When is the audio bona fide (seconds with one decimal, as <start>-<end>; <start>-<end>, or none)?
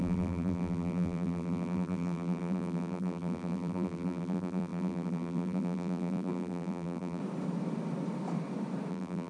7.2-8.9